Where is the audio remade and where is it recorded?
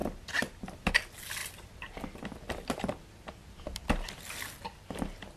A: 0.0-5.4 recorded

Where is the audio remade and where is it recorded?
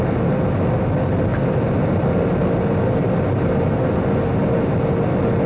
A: 0.0-5.5 recorded